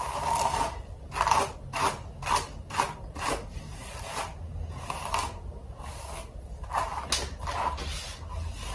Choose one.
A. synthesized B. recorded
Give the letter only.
B